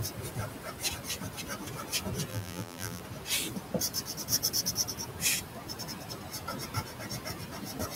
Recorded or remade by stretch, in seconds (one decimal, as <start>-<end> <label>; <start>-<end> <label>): 0.0-2.3 recorded; 2.3-3.0 remade; 3.0-8.0 recorded